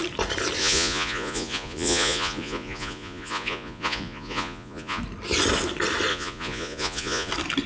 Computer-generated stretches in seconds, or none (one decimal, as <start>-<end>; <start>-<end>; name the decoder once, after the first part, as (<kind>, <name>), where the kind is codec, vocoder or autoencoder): 0.6-5.0 (vocoder, Vocos); 6.1-7.3